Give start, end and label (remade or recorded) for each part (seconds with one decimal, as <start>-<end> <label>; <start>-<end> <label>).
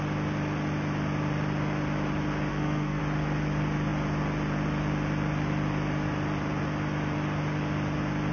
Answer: 0.0-2.5 recorded; 2.5-3.0 remade; 3.0-8.3 recorded